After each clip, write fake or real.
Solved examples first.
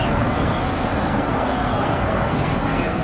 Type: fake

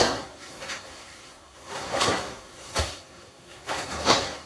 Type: fake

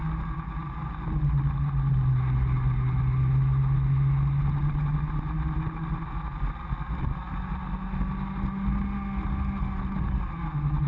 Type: real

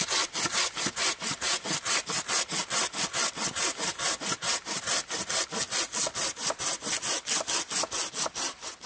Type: real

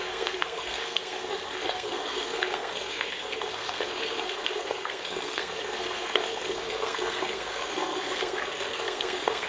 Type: fake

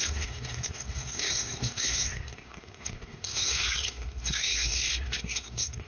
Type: fake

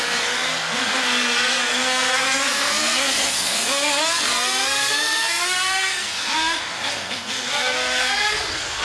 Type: fake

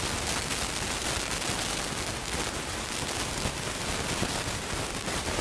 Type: real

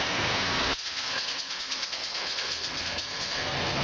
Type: fake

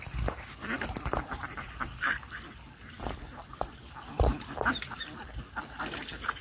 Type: real